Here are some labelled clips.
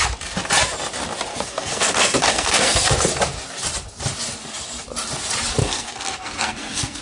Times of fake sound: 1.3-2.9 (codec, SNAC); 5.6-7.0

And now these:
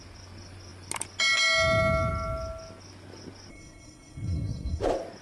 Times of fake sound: 3.5-4.8 (codec, SNAC)

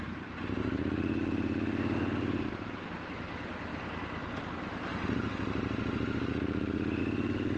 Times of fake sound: none

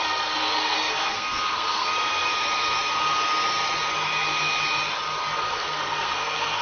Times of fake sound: 0.0-2.3 (codec, SNAC); 5.4-6.6